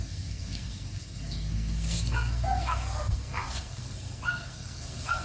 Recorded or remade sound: remade